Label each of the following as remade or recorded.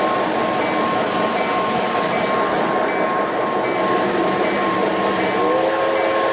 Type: recorded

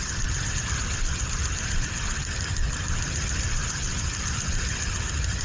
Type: recorded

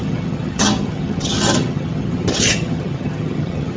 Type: remade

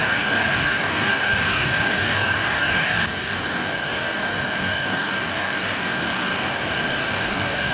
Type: remade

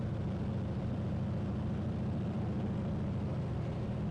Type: remade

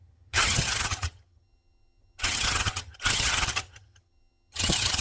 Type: remade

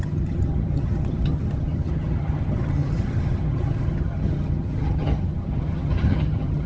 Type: remade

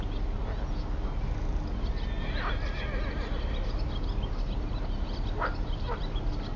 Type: recorded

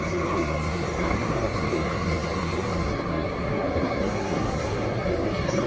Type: remade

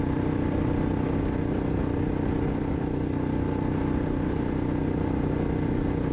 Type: recorded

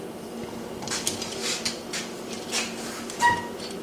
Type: recorded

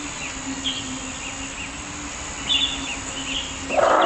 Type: recorded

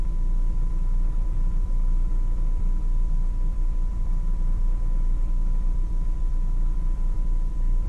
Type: remade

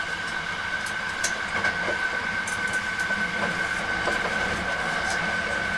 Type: recorded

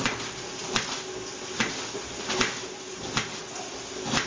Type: recorded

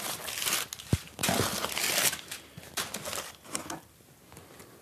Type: recorded